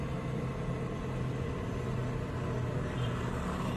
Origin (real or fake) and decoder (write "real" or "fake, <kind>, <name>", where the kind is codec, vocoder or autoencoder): real